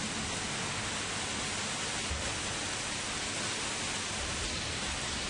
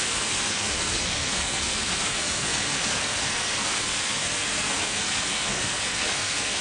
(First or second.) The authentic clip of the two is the first